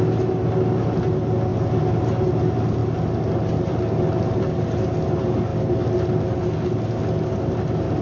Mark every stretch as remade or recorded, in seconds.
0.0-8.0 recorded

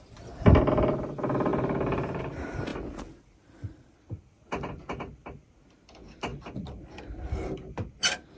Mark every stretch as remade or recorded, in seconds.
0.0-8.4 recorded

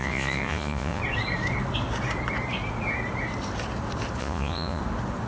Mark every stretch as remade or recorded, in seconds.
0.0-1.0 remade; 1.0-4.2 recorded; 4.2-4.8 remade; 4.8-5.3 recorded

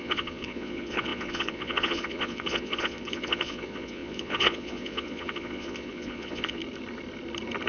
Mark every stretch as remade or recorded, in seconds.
0.0-6.6 remade; 6.6-7.7 recorded

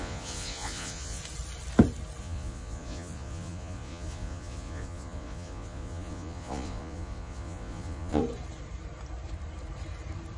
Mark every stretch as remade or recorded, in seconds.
0.0-1.2 remade; 1.2-2.2 recorded; 2.2-8.2 remade; 8.2-10.4 recorded

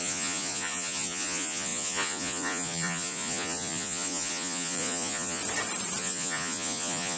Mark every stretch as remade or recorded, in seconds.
0.0-5.4 remade; 5.4-6.0 recorded; 6.0-7.2 remade

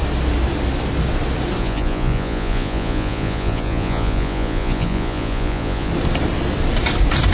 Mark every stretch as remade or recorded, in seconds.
0.0-1.6 recorded; 1.6-5.9 remade; 5.9-7.3 recorded

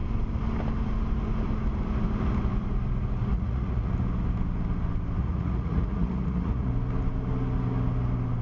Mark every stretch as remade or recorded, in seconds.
0.0-3.3 recorded; 3.3-3.9 remade; 3.9-5.2 recorded; 5.2-6.7 remade; 6.7-8.4 recorded